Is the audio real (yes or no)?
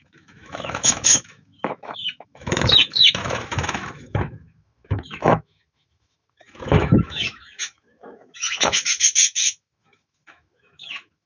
no